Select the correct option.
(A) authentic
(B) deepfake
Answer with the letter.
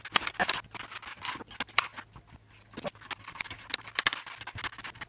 A